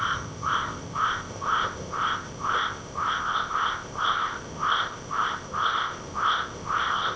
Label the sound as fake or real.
fake